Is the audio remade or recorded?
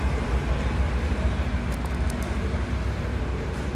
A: remade